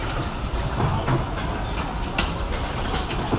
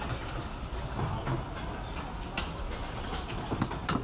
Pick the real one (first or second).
second